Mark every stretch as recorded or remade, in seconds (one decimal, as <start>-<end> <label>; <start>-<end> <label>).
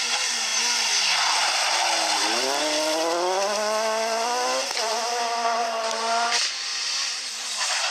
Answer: 0.0-7.9 recorded